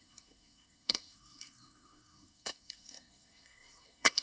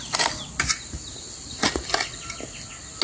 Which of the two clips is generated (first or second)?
first